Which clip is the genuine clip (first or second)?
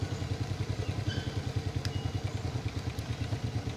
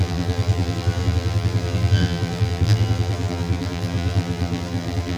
first